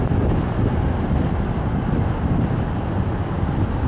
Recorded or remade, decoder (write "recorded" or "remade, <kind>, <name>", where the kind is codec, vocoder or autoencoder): recorded